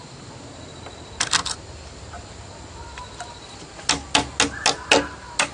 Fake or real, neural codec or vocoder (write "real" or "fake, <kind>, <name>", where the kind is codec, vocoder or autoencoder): real